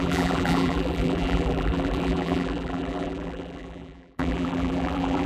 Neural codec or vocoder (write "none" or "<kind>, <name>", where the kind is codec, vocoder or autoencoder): vocoder, BigVGAN v2